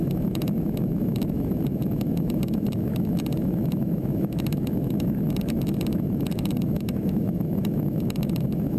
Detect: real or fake fake